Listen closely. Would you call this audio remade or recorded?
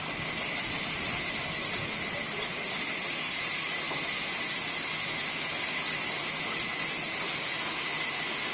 recorded